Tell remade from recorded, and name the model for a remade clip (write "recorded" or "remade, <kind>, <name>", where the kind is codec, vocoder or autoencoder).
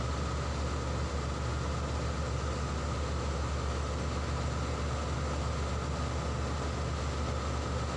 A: recorded